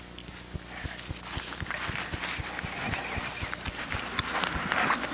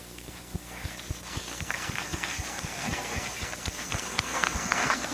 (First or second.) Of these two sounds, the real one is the first